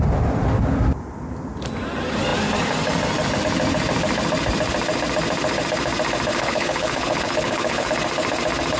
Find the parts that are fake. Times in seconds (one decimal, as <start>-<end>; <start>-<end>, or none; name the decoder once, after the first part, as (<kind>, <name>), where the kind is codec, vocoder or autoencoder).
6.3-7.9 (codec, HILCodec)